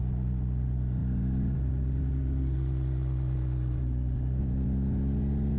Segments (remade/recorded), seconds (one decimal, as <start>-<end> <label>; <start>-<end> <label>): 0.0-5.6 recorded

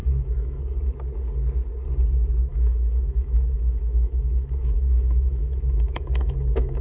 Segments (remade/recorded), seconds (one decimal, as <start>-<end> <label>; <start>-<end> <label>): 0.0-0.6 remade; 0.6-2.5 recorded; 2.5-6.8 remade

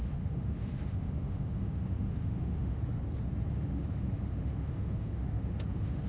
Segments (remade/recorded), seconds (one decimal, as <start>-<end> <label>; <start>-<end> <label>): 0.0-2.8 remade; 2.8-3.5 recorded; 3.5-6.1 remade

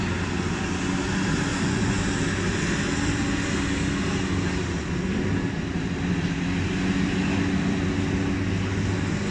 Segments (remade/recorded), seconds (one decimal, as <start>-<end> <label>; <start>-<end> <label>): 0.0-1.5 recorded; 1.5-2.0 remade; 2.0-9.3 recorded

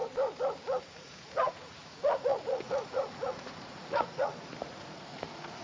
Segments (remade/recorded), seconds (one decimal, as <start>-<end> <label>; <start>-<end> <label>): 0.0-0.8 recorded; 0.8-5.6 remade